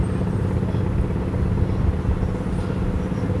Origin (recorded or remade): recorded